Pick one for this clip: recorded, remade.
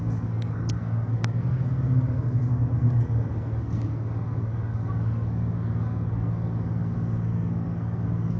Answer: remade